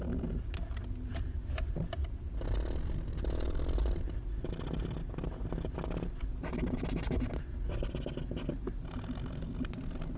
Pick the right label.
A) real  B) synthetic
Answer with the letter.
A